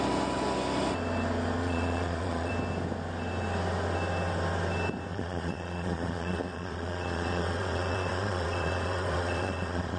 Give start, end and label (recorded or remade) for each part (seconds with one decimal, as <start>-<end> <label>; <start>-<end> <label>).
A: 0.0-1.6 recorded; 1.6-2.5 remade; 2.5-5.1 recorded; 5.1-10.0 remade